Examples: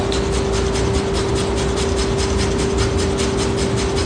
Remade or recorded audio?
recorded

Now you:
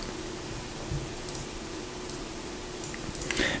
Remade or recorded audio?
recorded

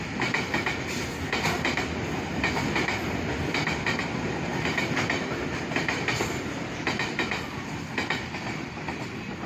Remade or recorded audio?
recorded